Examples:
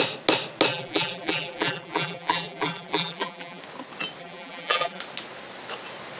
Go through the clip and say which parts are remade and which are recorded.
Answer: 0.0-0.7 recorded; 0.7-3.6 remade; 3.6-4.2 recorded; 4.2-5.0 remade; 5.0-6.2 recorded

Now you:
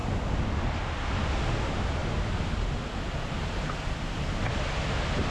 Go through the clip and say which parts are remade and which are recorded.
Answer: 0.0-2.0 recorded; 2.0-4.4 remade; 4.4-5.3 recorded

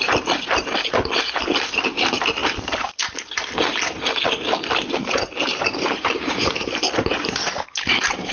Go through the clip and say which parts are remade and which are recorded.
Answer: 0.0-8.3 remade

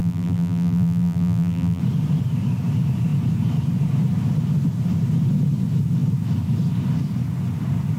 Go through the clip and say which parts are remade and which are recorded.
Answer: 0.0-1.8 remade; 1.8-8.0 recorded

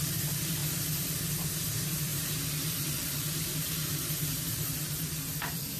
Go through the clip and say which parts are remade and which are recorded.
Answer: 0.0-0.6 remade; 0.6-1.5 recorded; 1.5-5.8 remade